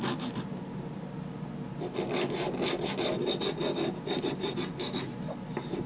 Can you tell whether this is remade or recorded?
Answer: recorded